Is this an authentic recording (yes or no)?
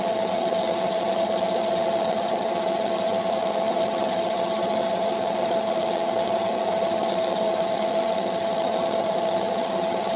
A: no